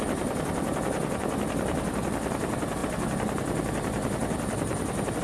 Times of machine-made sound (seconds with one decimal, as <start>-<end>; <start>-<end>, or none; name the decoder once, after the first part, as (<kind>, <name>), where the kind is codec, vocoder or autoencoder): 0.0-2.8 (vocoder, BigVGAN v2)

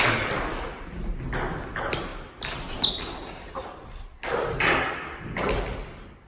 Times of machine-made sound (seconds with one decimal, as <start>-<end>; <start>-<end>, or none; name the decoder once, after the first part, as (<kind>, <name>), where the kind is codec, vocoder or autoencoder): none

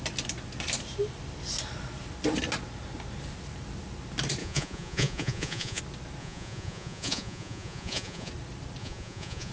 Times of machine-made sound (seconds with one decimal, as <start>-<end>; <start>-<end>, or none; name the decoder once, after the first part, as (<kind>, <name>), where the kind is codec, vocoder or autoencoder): 4.4-5.8 (vocoder, Vocos); 6.2-8.3; 8.8-9.5